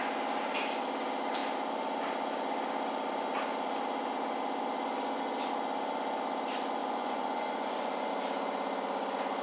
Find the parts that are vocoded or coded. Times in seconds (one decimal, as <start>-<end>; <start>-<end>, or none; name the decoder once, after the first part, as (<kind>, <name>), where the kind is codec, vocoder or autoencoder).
6.8-8.1 (vocoder, Vocos)